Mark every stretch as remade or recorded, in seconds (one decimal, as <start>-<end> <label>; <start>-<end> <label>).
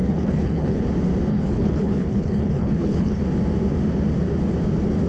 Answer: 0.0-0.8 remade; 0.8-1.3 recorded; 1.3-3.2 remade; 3.2-5.1 recorded